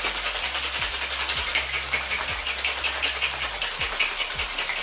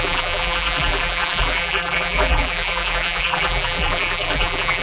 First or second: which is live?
first